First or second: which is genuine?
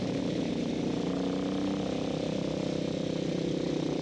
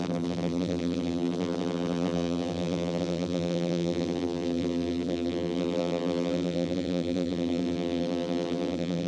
first